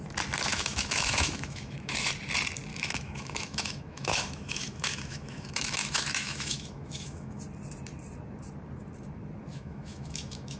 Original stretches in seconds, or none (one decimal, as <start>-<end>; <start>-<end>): 0.0-0.5; 2.1-2.7; 7.4-9.5